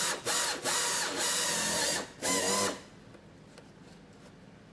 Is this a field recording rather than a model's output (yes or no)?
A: yes